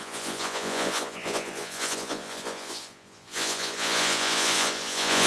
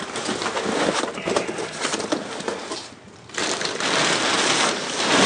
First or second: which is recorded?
second